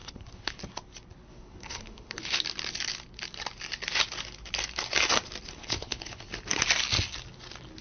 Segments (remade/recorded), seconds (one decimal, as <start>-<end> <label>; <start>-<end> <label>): 0.0-0.6 remade; 0.6-1.3 recorded; 1.3-2.4 remade; 2.4-5.6 recorded; 5.6-6.2 remade; 6.2-7.8 recorded